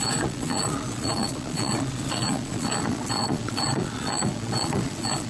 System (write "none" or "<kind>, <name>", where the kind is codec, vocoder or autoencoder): vocoder, Vocos